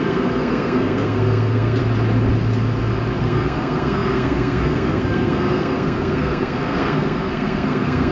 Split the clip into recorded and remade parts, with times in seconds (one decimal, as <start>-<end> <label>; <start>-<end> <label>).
0.0-1.8 remade; 1.8-3.2 recorded; 3.2-8.1 remade